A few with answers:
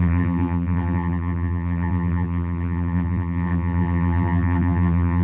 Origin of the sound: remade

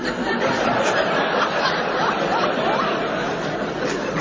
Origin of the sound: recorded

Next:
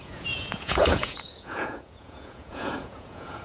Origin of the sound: remade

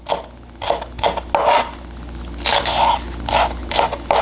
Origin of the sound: recorded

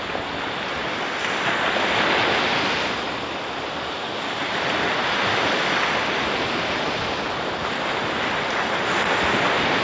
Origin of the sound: recorded